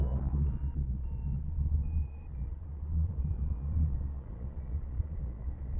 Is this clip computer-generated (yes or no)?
yes